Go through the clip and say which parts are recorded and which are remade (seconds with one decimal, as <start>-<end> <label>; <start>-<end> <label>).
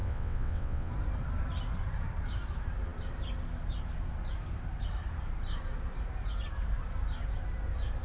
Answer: 0.0-0.9 remade; 0.9-8.0 recorded